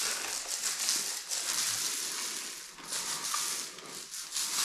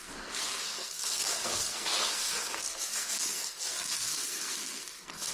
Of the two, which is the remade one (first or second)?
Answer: second